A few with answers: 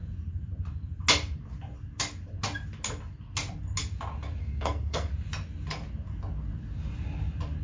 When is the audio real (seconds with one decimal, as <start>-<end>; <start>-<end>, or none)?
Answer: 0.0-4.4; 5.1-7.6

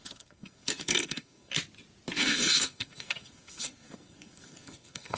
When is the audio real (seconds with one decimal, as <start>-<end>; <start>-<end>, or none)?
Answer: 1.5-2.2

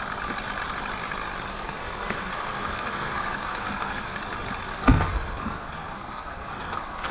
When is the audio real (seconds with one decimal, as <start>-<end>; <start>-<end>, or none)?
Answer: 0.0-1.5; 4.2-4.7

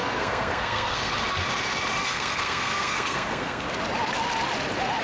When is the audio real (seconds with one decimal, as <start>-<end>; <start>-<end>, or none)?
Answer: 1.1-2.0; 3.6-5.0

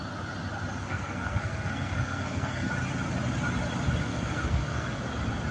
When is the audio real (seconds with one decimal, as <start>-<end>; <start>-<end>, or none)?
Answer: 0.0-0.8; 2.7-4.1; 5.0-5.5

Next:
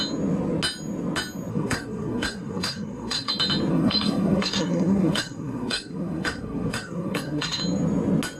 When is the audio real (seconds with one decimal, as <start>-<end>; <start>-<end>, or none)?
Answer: 0.0-1.5; 3.3-3.7; 7.6-8.4

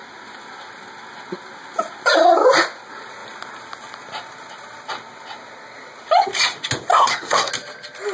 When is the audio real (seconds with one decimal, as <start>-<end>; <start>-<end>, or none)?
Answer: 0.0-6.9; 7.5-8.1